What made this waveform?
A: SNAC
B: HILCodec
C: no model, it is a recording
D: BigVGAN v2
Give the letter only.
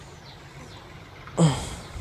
C